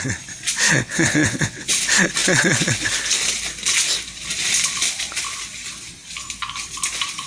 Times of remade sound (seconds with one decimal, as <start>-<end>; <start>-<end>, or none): 0.7-1.7